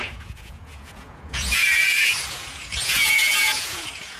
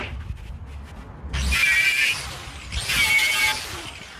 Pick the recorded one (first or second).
second